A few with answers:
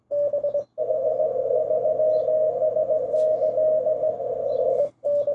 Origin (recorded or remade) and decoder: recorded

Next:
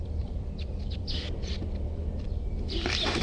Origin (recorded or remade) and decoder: remade, vocoder, BigVGAN v2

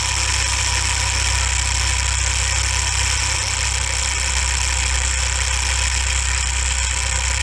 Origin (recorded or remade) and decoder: recorded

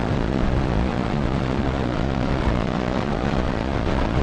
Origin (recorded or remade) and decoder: remade, vocoder, Vocos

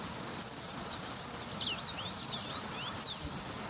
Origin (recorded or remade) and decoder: recorded